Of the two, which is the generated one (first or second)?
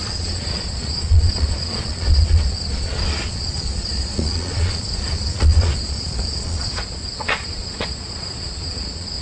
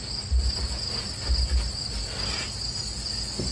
first